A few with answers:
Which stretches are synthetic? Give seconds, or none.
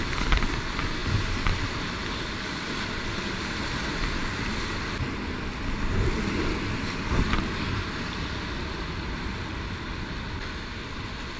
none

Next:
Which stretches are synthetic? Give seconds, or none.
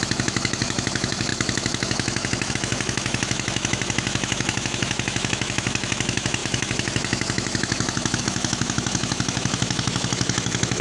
0.0-10.8 (autoencoder, DAC-VAE)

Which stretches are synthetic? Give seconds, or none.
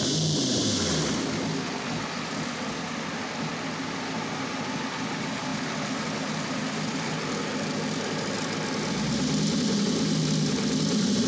none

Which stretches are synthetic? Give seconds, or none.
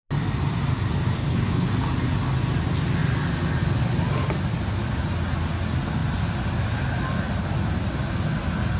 1.2-1.7 (codec, HILCodec)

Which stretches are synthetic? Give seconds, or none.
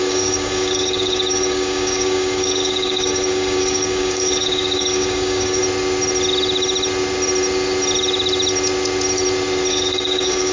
0.0-5.6 (codec, DAC); 9.7-10.5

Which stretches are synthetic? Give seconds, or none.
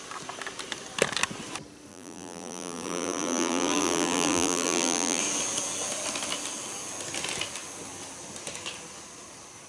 1.9-5.2 (vocoder, BigVGAN v2)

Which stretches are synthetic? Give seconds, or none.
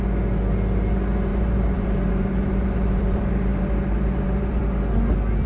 1.3-4.6 (vocoder, BigVGAN v2)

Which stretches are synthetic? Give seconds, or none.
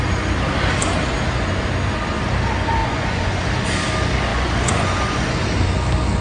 2.8-3.4 (vocoder, Vocos); 4.3-5.3